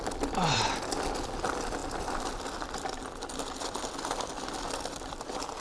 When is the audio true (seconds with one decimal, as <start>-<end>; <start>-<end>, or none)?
0.0-5.6